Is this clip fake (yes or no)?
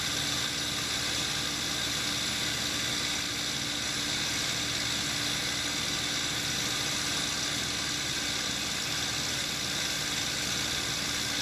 no